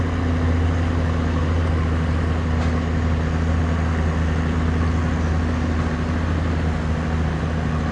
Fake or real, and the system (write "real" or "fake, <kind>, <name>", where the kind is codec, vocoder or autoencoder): real